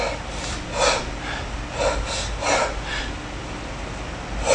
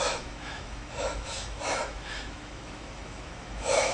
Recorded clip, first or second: first